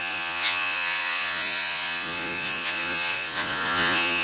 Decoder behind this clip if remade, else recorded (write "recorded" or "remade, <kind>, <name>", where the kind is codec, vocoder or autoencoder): remade, vocoder, Vocos